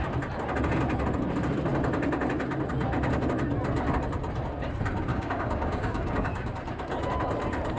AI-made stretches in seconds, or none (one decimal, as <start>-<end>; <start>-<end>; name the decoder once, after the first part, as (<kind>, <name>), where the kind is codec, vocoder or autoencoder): 5.1-6.5 (codec, DAC)